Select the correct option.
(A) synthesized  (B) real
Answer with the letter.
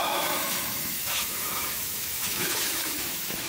A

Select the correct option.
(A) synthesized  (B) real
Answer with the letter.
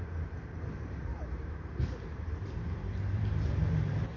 A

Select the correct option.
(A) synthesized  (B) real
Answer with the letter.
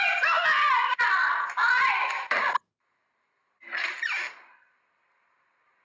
B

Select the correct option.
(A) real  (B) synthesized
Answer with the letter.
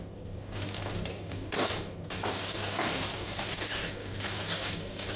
B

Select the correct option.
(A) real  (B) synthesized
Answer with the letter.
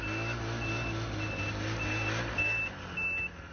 A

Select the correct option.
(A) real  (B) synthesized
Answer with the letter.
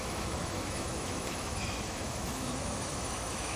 B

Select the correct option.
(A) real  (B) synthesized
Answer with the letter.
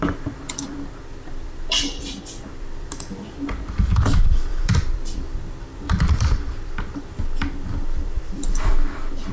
B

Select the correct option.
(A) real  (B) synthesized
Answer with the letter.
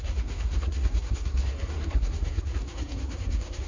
B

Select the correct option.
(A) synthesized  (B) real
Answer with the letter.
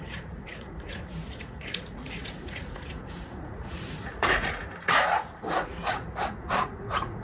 A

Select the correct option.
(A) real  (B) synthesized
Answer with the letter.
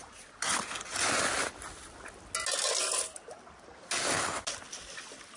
A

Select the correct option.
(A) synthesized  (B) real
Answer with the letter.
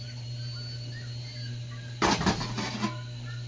B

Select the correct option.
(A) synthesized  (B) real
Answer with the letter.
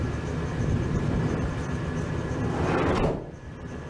B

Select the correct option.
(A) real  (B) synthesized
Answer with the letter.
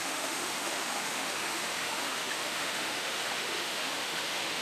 B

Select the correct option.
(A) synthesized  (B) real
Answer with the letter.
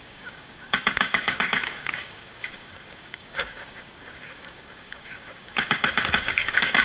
A